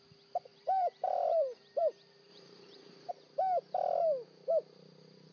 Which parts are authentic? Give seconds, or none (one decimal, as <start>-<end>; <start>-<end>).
0.0-0.5; 1.8-2.3; 3.1-5.3